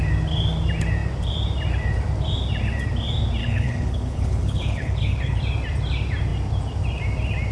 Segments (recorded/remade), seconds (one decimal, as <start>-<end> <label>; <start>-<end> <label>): 0.0-3.4 recorded; 3.4-5.4 remade; 5.4-7.5 recorded